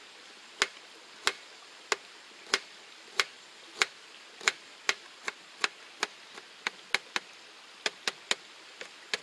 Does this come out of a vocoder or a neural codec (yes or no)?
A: no